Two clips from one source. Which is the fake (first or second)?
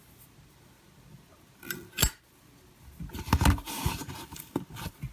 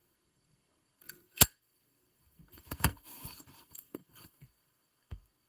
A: second